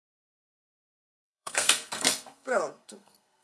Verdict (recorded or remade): remade